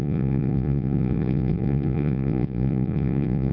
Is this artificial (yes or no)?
yes